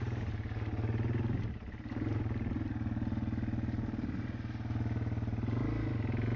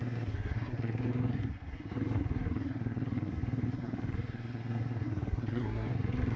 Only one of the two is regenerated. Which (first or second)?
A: second